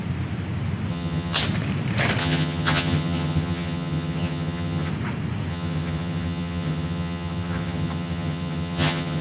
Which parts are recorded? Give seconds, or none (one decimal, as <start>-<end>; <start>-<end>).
0.0-0.9; 1.4-2.2; 4.9-5.5